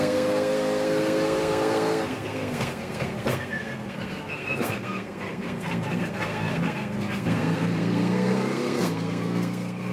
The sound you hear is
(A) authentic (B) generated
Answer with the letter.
B